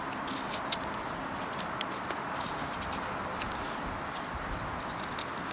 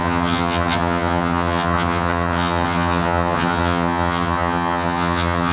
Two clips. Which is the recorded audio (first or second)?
first